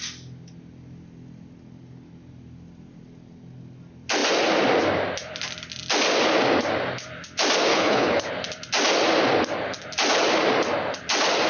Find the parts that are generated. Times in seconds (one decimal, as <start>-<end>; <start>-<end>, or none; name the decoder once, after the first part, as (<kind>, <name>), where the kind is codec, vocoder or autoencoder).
7.7-8.3 (codec, HILCodec)